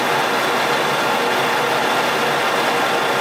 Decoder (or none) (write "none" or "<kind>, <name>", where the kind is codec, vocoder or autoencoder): none